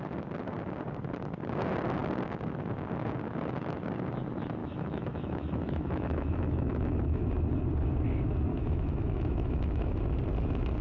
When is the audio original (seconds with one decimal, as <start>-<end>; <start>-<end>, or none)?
0.0-4.6; 7.3-8.5; 10.0-10.8